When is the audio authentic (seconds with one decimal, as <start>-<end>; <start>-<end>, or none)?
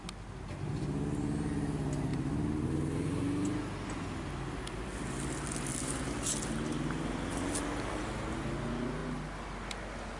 0.0-10.2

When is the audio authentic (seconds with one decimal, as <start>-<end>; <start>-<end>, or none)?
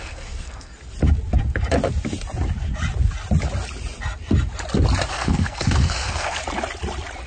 0.7-5.1; 6.4-7.3